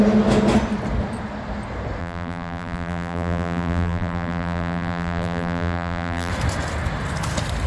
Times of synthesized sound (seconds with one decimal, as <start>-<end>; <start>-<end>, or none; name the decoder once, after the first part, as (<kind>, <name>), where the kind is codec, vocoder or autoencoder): 2.0-6.3 (vocoder, BigVGAN v2)